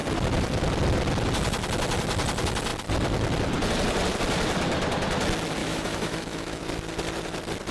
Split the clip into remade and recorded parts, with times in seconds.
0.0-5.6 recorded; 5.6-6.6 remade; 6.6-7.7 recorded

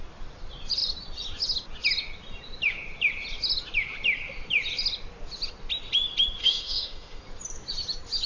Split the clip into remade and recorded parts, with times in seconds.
0.0-6.4 recorded; 6.4-7.2 remade; 7.2-8.3 recorded

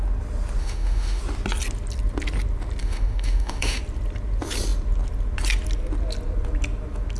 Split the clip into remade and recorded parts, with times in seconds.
0.0-0.6 recorded; 0.6-1.2 remade; 1.2-2.8 recorded; 2.8-3.8 remade; 3.8-7.2 recorded

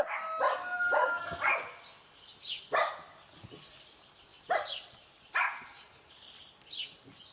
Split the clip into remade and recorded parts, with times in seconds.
0.0-0.6 recorded; 0.6-1.2 remade; 1.2-7.3 recorded

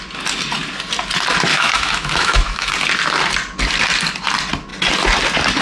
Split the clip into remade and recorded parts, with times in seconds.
0.0-1.5 recorded; 1.5-2.7 remade; 2.7-5.6 recorded

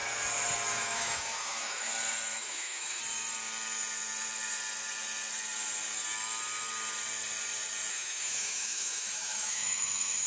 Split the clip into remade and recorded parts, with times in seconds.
0.0-0.7 recorded; 0.7-1.9 remade; 1.9-2.4 recorded; 2.4-3.0 remade; 3.0-7.9 recorded; 7.9-10.3 remade